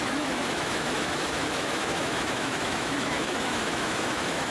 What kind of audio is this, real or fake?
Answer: fake